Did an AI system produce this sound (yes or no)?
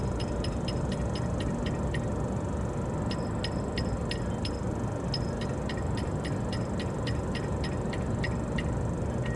no